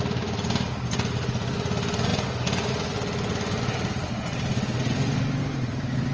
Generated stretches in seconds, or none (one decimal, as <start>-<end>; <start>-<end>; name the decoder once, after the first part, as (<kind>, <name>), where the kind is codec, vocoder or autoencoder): none